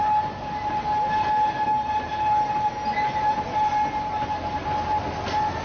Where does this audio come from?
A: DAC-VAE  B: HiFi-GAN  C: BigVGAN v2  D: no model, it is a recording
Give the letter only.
D